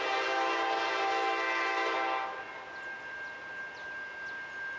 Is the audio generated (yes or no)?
no